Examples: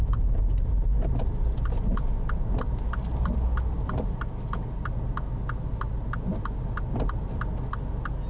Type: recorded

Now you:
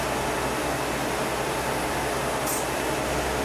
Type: recorded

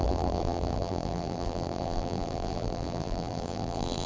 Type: remade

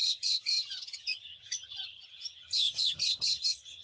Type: remade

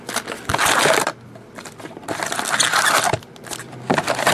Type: recorded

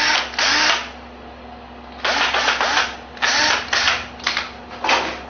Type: recorded